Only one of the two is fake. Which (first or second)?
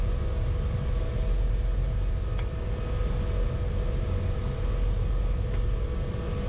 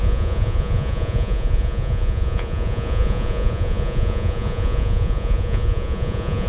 second